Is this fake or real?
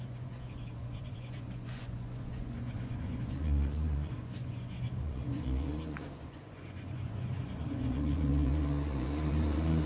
fake